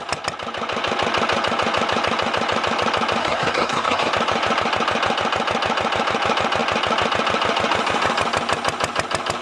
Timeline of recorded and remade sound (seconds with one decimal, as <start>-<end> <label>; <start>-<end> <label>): 0.0-3.2 recorded; 3.2-4.1 remade; 4.1-9.4 recorded